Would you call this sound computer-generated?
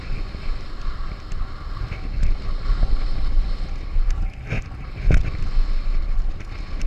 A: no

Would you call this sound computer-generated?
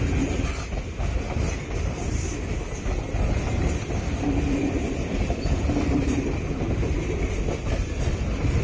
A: no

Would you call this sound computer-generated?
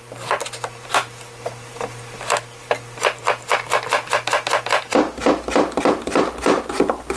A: no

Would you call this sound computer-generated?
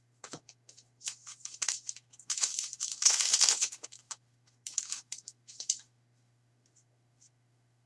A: yes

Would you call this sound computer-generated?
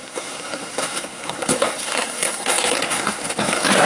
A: yes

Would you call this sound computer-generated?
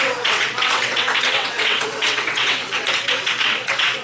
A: yes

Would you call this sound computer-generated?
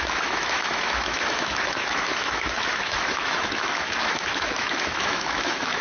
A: yes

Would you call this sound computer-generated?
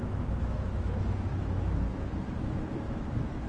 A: yes